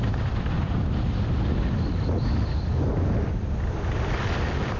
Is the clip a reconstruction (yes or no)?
no